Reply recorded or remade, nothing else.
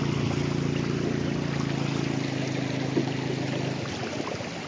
recorded